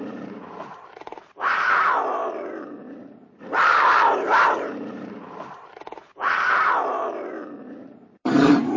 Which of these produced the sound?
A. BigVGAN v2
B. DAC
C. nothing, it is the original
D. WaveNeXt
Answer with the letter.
A